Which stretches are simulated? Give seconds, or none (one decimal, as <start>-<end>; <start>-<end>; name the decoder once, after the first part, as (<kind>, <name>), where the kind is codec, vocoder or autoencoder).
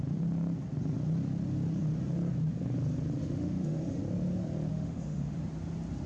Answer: 3.2-4.0 (autoencoder, DAC-VAE); 4.7-5.4